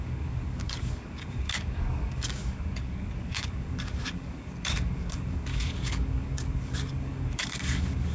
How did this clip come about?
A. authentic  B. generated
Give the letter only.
B